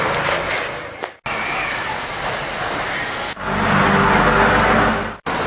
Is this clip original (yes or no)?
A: yes